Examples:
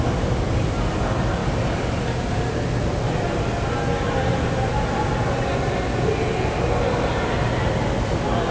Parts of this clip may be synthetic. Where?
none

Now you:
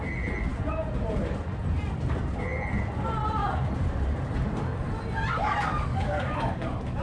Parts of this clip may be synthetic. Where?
5.9-7.0 (codec, DAC)

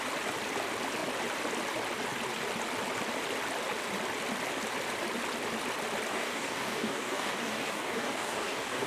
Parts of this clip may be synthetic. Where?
6.1-8.9 (codec, DAC)

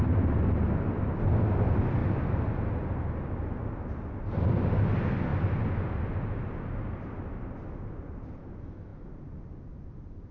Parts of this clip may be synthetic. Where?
none

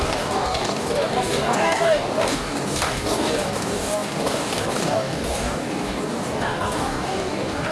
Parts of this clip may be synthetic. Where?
0.0-7.7 (codec, DAC)

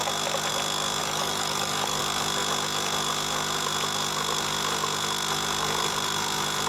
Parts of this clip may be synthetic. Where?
1.0-2.0 (codec, DAC)